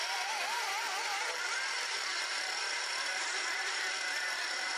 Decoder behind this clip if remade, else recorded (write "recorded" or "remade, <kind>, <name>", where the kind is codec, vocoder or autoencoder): remade, vocoder, BigVGAN v2